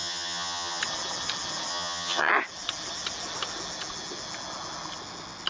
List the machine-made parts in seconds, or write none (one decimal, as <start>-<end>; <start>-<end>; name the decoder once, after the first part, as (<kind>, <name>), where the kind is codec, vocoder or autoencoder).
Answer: 0.0-0.8 (vocoder, HiFi-GAN); 1.7-2.3